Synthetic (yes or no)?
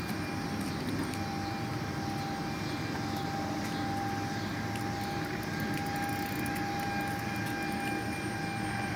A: no